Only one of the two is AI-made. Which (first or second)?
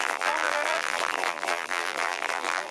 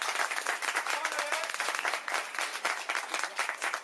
first